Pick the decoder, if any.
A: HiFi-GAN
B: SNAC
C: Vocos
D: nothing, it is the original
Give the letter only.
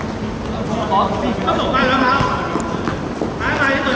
D